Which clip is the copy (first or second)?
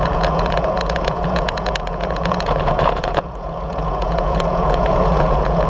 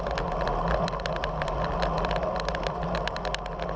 first